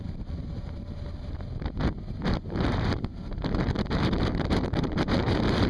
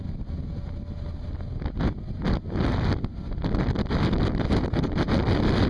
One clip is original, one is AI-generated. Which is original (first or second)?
second